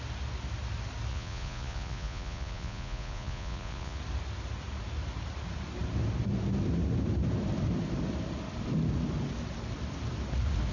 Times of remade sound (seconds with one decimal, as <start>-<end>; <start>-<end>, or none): 1.1-4.0